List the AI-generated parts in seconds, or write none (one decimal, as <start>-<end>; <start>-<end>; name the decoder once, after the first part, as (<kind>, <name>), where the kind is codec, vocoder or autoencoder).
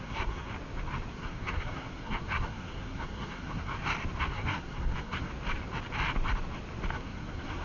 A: 0.0-0.5 (codec, SNAC); 1.1-3.7; 4.2-5.3; 6.9-7.6